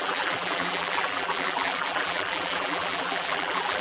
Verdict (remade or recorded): remade